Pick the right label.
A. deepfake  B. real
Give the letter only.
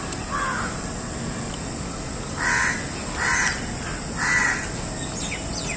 B